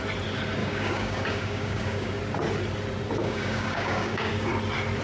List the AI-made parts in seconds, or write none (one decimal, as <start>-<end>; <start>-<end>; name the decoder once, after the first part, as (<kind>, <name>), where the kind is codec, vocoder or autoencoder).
0.6-2.2 (codec, DAC); 3.2-4.5